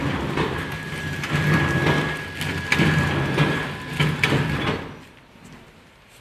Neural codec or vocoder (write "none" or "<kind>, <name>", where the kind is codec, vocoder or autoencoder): none